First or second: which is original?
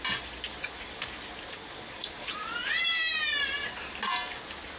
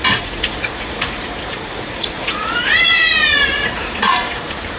first